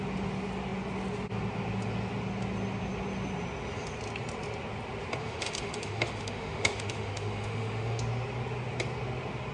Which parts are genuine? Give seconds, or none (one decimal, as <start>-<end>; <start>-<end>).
0.0-5.2; 8.0-9.5